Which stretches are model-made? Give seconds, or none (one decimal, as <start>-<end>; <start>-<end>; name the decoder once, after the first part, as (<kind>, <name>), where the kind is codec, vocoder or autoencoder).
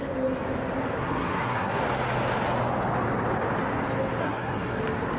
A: 0.9-1.8 (codec, SNAC); 4.2-4.8